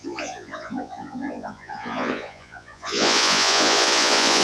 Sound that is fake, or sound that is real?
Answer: fake